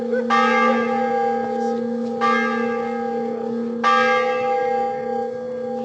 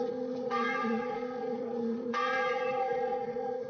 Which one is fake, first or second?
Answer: second